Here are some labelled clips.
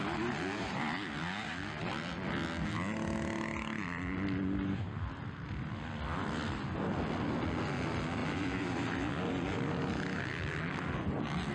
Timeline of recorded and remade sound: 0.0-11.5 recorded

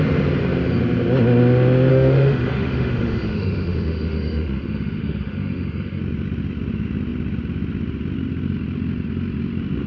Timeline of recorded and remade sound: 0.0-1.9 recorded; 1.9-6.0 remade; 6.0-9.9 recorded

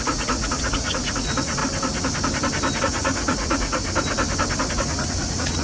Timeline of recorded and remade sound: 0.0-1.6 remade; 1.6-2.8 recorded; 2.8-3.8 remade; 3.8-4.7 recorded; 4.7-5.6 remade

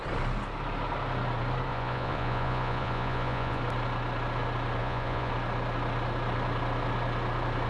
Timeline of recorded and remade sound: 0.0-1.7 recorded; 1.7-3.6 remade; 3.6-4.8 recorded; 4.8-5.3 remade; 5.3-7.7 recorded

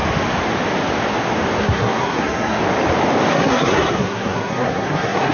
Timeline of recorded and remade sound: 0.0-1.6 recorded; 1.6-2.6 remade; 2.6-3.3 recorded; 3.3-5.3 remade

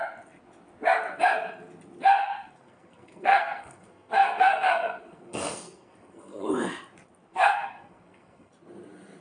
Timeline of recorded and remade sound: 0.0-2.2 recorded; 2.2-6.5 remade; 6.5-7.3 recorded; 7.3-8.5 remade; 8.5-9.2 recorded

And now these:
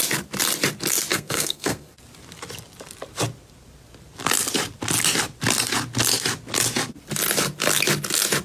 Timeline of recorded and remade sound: 0.0-1.1 recorded; 1.1-1.9 remade; 1.9-8.4 recorded